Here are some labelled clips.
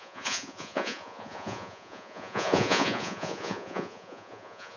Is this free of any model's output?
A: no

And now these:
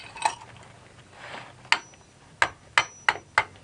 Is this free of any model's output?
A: yes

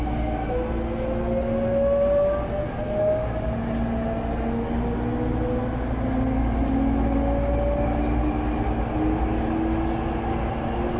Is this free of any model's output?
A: yes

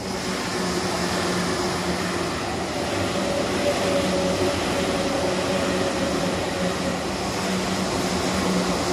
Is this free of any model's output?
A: yes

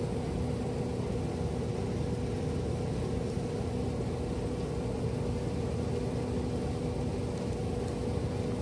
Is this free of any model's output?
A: yes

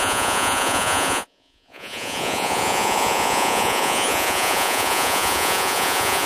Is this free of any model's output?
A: no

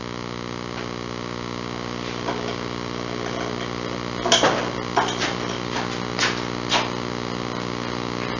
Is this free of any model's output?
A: yes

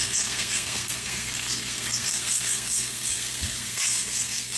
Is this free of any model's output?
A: no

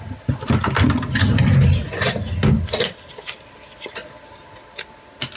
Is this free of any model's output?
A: yes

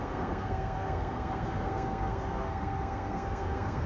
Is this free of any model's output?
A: no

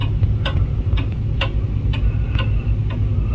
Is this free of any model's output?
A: yes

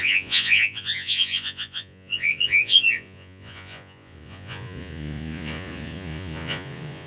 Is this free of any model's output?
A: no